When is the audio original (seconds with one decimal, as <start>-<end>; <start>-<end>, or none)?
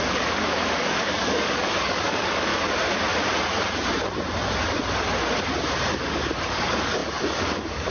2.5-5.9